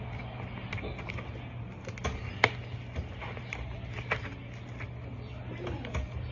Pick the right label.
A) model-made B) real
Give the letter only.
B